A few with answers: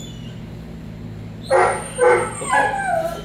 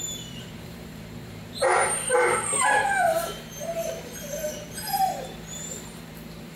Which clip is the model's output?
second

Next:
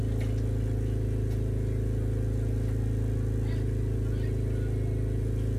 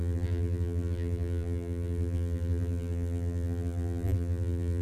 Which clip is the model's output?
second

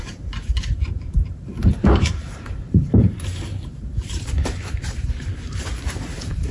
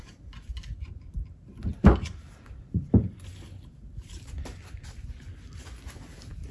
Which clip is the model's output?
first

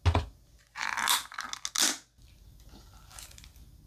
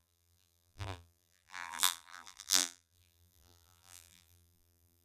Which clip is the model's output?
second